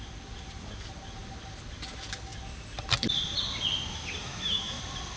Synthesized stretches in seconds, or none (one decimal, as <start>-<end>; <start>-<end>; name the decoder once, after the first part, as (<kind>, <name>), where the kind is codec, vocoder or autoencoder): 4.2-4.8 (autoencoder, DAC-VAE)